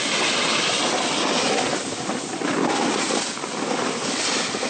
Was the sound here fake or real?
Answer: real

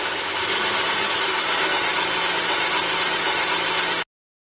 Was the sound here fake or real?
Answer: real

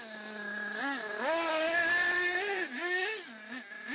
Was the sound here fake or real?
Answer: real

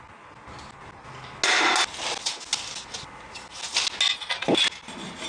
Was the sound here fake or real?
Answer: real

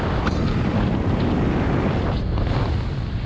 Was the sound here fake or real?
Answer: real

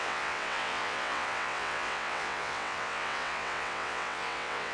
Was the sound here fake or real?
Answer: fake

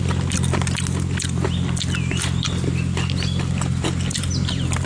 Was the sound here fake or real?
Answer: real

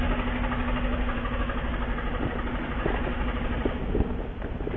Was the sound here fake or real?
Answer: real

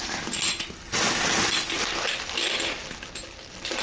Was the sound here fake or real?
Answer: real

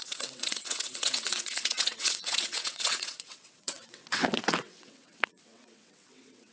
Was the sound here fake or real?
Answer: fake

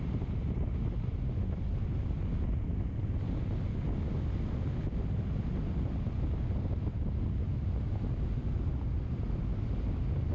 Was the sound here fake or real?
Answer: real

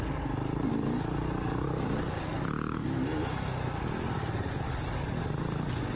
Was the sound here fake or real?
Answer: real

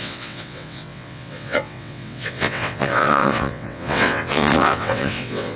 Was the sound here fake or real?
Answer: fake